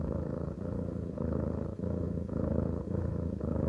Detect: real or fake fake